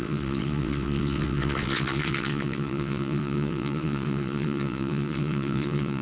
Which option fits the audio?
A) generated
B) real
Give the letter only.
A